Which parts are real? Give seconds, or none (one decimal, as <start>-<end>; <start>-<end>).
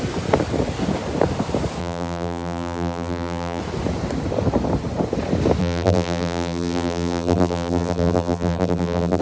0.0-1.8; 3.6-5.6